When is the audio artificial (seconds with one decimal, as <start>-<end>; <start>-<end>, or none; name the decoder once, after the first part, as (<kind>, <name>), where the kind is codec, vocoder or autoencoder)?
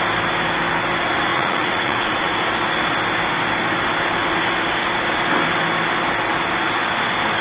1.3-2.3 (vocoder, Vocos)